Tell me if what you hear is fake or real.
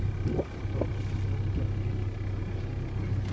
real